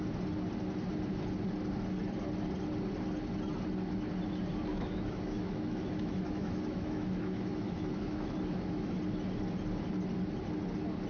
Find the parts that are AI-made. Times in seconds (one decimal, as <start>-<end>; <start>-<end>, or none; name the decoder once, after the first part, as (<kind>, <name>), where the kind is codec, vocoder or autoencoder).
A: 4.7-9.0 (autoencoder, DAC-VAE)